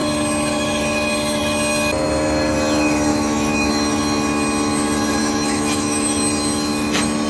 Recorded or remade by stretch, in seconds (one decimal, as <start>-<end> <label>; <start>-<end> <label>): 0.0-3.1 recorded; 3.1-3.7 remade; 3.7-5.2 recorded; 5.2-6.2 remade; 6.2-7.3 recorded